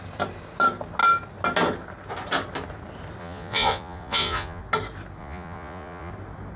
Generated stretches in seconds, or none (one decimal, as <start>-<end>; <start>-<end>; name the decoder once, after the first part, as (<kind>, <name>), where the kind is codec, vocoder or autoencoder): 3.2-4.6 (vocoder, Vocos); 5.2-6.1